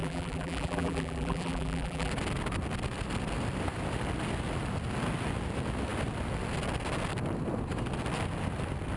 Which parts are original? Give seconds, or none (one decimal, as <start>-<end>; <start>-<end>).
2.1-9.0